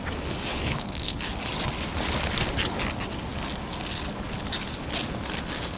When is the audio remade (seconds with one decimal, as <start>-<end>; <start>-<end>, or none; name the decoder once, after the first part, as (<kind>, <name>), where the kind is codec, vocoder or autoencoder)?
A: 0.5-1.2 (codec, HILCodec)